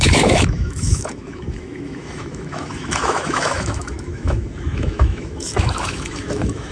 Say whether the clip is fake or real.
fake